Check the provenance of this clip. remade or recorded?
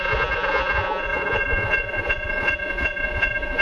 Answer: remade